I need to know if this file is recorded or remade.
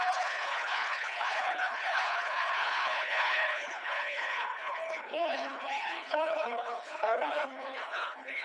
remade